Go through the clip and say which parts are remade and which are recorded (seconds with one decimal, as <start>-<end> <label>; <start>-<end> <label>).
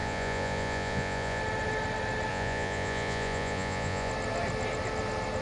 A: 0.0-1.4 remade; 1.4-2.3 recorded; 2.3-4.1 remade; 4.1-5.4 recorded